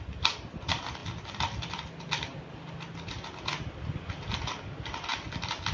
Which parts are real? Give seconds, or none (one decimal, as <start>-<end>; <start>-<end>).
0.0-5.7